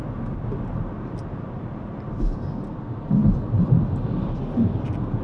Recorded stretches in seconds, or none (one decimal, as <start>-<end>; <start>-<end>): 0.0-5.2